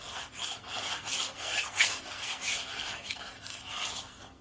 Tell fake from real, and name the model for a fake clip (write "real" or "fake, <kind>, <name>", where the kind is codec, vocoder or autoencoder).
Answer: fake, codec, SNAC